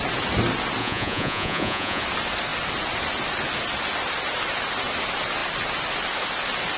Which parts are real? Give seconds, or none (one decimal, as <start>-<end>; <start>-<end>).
0.0-0.8; 2.0-6.8